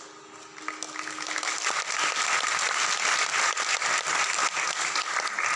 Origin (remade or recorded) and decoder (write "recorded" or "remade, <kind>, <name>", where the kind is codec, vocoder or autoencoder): recorded